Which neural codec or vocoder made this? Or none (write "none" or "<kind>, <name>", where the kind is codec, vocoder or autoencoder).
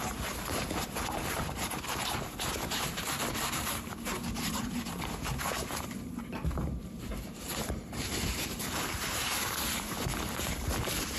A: vocoder, BigVGAN v2